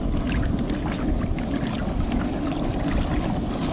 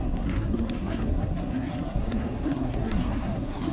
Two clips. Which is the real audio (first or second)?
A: first